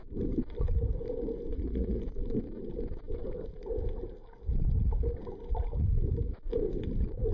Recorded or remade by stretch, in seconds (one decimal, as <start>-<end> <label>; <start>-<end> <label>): 0.0-1.5 recorded; 1.5-2.0 remade; 2.0-7.3 recorded